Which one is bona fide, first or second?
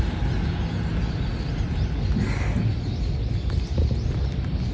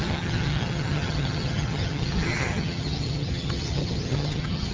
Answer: first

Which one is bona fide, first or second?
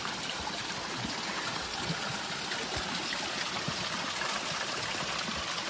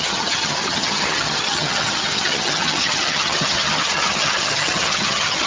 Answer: first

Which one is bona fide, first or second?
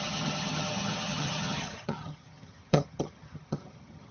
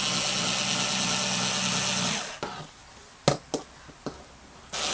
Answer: second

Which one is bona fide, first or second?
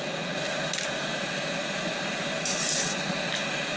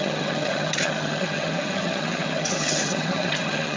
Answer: first